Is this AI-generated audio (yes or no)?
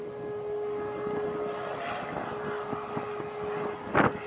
no